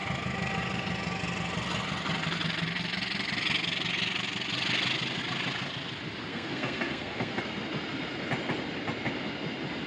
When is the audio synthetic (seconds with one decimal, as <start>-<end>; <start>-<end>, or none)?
6.3-7.4